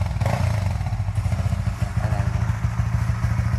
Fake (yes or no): no